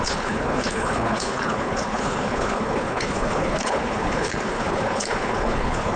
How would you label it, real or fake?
fake